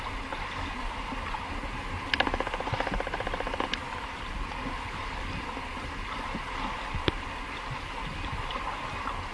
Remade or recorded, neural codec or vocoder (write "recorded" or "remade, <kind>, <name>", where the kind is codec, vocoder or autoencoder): recorded